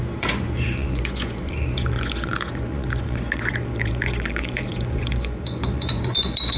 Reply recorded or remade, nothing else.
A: remade